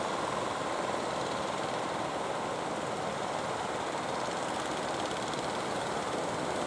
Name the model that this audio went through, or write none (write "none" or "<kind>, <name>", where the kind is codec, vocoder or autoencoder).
none